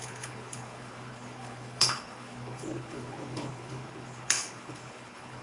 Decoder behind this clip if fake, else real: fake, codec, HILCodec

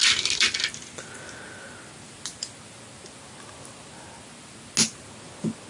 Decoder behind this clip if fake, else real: real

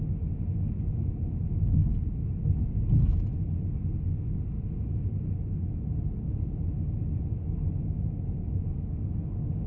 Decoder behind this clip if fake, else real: real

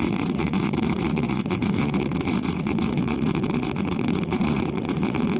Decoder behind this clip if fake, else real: fake, vocoder, Vocos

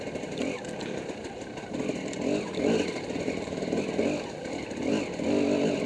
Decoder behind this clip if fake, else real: real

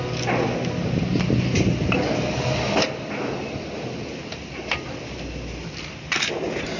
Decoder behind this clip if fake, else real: real